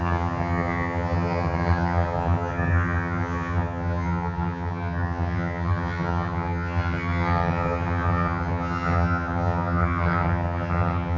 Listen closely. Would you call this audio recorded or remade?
remade